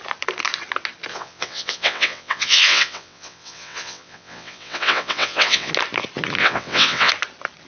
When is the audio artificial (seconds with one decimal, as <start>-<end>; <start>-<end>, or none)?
1.1-5.7; 6.4-7.1